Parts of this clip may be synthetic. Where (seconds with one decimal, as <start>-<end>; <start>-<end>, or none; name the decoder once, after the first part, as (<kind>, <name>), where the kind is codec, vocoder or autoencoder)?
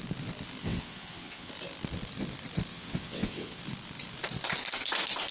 0.6-1.5 (vocoder, WaveNeXt); 2.7-3.6